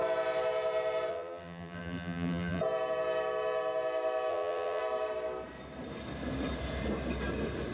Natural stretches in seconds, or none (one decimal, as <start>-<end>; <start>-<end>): 0.0-1.1; 2.6-4.3; 4.8-7.7